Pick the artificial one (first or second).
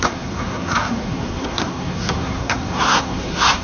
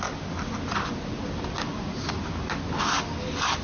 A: first